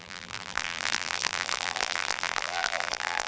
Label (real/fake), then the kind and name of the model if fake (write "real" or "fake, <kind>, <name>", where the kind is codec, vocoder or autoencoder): fake, vocoder, BigVGAN v2